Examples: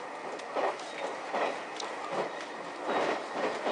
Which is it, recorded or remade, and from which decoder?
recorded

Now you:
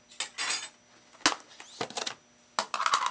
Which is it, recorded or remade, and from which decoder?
recorded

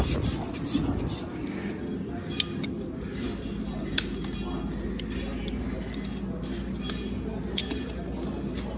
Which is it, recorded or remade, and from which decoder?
recorded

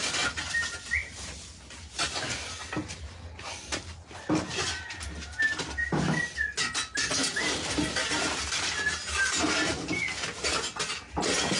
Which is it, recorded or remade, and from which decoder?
recorded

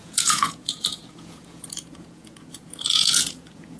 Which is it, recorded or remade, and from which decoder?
remade, vocoder, Vocos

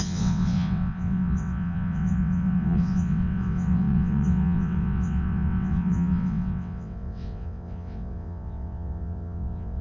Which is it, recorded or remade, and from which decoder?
remade, vocoder, WaveNeXt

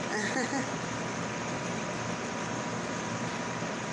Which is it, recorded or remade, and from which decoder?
recorded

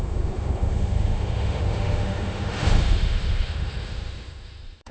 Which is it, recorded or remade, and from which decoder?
remade, autoencoder, DAC-VAE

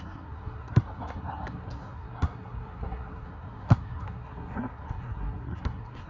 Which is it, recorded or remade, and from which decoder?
remade, codec, SNAC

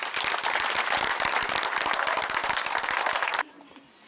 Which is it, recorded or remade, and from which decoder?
recorded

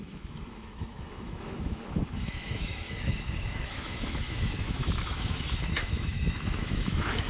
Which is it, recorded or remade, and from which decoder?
remade, autoencoder, DAC-VAE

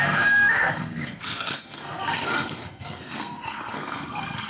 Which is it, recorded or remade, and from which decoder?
remade, codec, SNAC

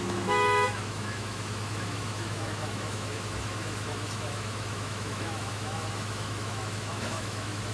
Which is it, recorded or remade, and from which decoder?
remade, autoencoder, DAC-VAE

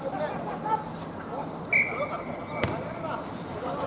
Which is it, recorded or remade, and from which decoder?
recorded